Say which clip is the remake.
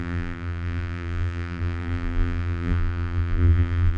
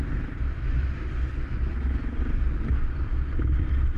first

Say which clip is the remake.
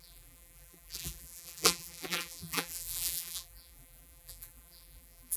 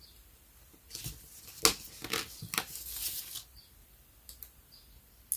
first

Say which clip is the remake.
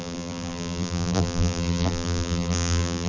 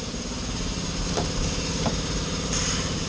first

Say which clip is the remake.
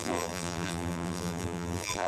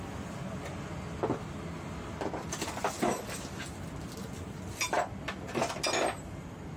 first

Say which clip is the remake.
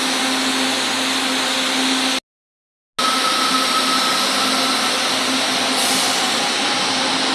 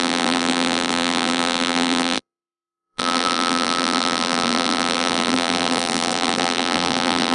second